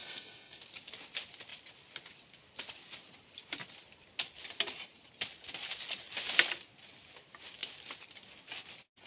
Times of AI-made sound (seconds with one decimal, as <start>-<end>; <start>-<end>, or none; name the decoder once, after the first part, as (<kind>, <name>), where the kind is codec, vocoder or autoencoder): 0.0-0.6 (codec, SNAC)